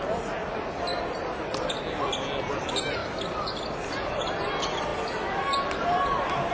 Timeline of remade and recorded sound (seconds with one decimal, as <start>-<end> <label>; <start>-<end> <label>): 0.0-6.5 recorded